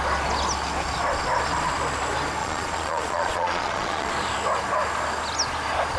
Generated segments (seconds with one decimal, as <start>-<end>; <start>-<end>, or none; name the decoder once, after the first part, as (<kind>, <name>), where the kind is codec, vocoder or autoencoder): 2.4-4.1 (vocoder, Vocos)